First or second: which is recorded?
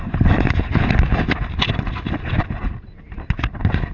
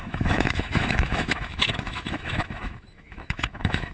first